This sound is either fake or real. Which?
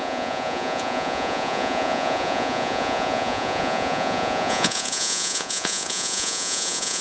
fake